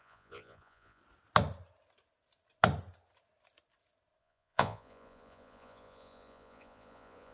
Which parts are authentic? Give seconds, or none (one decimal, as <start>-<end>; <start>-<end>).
1.0-4.2